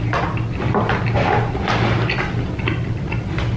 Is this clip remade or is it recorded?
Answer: recorded